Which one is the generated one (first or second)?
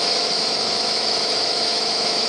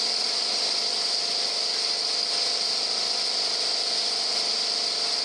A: first